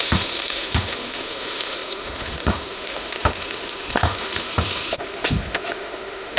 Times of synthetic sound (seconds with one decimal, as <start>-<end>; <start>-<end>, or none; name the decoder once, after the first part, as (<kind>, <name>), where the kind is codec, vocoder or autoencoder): 0.0-6.4 (autoencoder, DAC-VAE)

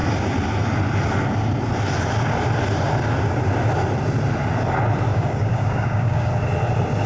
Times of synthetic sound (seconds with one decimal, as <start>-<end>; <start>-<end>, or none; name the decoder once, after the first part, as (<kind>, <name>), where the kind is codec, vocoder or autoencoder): 5.1-6.3 (codec, DAC)

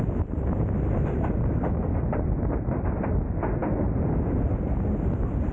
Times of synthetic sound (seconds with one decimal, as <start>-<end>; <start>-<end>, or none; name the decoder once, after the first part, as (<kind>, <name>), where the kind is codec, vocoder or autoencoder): none

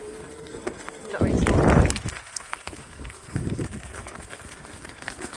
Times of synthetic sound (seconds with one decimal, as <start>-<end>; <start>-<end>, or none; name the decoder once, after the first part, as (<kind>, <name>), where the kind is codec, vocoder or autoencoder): 0.0-1.1 (codec, SNAC); 2.1-5.4

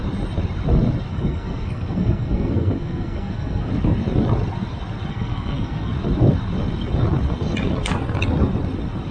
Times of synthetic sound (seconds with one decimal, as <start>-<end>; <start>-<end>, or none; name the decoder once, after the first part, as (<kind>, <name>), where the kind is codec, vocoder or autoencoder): 1.1-3.7 (codec, SNAC); 5.1-5.9

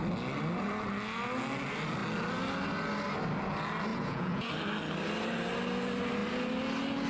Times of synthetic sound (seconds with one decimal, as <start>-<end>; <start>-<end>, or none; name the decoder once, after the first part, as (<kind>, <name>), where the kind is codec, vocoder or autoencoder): 3.9-4.5 (vocoder, Vocos)

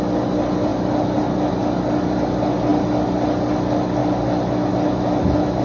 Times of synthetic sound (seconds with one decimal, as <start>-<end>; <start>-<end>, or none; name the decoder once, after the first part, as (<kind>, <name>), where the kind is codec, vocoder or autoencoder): 0.7-1.5 (vocoder, BigVGAN v2)

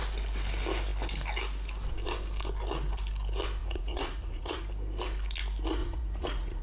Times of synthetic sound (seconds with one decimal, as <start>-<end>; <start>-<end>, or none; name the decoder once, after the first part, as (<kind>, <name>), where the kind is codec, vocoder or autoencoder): 3.6-4.6 (vocoder, Vocos); 5.8-6.6